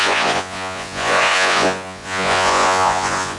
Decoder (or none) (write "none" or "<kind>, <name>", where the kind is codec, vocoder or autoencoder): vocoder, Vocos